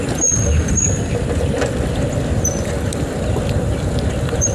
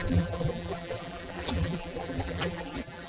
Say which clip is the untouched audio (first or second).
first